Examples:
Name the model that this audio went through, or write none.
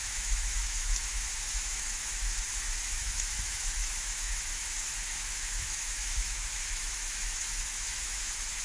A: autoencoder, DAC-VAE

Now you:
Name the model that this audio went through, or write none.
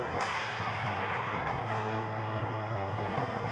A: codec, SNAC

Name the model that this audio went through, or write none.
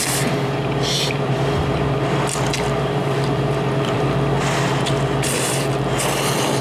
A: vocoder, BigVGAN v2